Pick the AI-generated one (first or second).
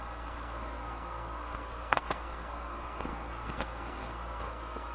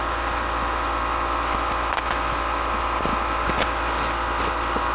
first